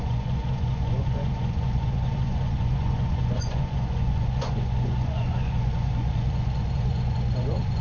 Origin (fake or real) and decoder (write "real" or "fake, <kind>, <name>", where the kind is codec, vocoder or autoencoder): fake, vocoder, Vocos